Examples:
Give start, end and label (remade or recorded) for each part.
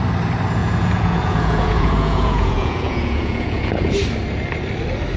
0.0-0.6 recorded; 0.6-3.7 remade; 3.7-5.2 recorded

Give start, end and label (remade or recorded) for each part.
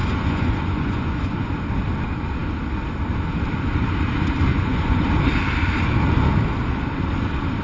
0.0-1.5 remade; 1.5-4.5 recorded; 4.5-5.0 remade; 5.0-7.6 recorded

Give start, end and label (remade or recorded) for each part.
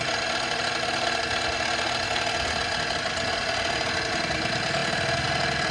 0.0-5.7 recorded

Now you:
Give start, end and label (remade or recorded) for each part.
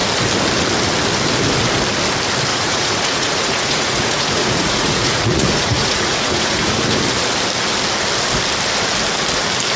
0.0-2.5 recorded; 2.5-7.0 remade; 7.0-9.8 recorded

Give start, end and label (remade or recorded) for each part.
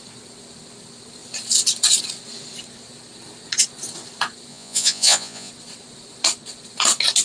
0.0-4.5 recorded; 4.5-5.5 remade; 5.5-7.2 recorded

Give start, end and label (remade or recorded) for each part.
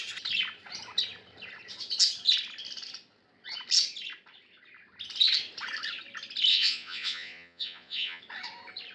0.0-6.5 recorded; 6.5-8.2 remade; 8.2-8.9 recorded